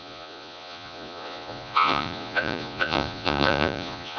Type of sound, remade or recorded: remade